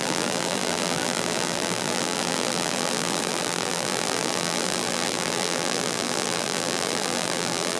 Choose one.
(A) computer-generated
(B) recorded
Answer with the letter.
A